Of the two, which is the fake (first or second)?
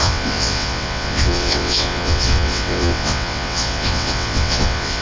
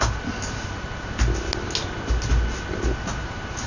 first